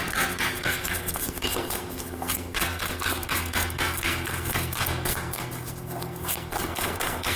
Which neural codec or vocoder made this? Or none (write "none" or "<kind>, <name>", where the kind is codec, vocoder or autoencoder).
codec, SNAC